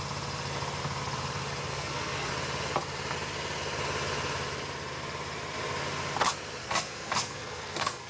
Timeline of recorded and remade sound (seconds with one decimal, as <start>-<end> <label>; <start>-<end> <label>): 0.0-1.7 recorded; 1.7-2.3 remade; 2.3-6.6 recorded; 6.6-8.1 remade